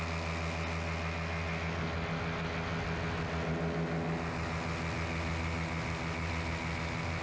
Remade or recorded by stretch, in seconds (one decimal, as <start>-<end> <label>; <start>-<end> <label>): 0.0-7.2 recorded